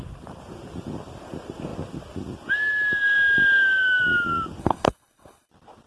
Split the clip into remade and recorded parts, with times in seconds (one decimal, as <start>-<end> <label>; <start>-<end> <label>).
0.0-4.6 recorded; 4.6-5.5 remade; 5.5-5.9 recorded